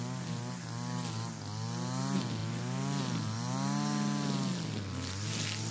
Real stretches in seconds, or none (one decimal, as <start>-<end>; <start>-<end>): 0.0-5.7